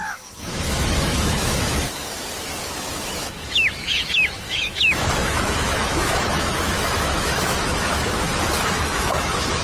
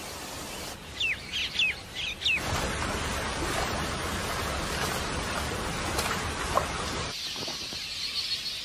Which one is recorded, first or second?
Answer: second